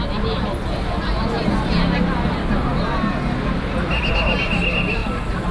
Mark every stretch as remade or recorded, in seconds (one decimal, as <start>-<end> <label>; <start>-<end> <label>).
0.0-5.5 recorded